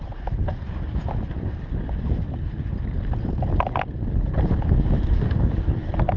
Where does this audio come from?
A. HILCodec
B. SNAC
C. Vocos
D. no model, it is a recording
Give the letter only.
D